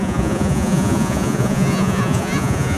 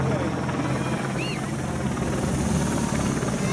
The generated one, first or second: first